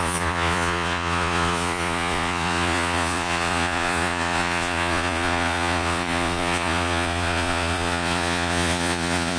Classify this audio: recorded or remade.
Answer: remade